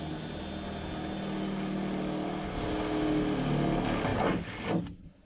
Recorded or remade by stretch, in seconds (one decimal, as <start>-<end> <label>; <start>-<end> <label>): 0.0-5.2 recorded